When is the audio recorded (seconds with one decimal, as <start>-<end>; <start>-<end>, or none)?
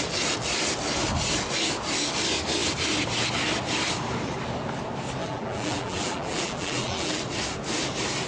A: 0.0-5.2; 7.2-8.3